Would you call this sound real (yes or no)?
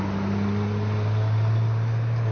yes